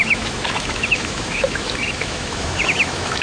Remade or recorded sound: remade